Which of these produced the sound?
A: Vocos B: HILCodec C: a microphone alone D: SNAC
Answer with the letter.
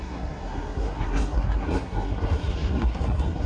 D